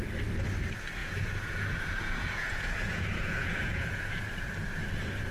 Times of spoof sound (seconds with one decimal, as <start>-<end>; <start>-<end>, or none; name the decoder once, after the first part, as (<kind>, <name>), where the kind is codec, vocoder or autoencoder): 1.0-4.2 (vocoder, Vocos)